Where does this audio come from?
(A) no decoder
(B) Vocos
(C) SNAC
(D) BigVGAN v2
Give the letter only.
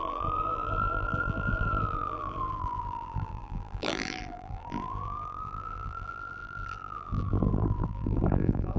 D